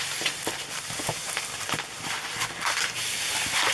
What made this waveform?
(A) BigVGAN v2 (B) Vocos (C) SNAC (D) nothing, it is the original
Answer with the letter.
D